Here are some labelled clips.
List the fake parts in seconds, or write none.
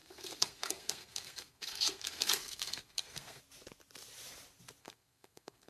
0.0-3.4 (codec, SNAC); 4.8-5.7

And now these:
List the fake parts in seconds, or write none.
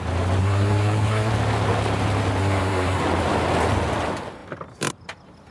0.4-1.3 (codec, SNAC); 2.4-3.0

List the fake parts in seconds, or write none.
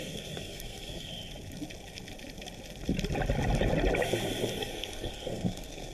0.0-1.1 (codec, SNAC); 4.6-5.9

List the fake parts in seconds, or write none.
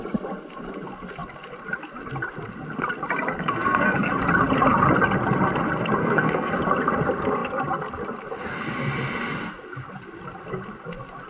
3.4-4.1 (codec, SNAC); 6.0-6.5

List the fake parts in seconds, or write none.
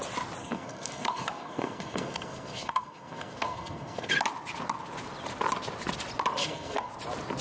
0.4-4.1 (codec, SNAC); 6.4-6.9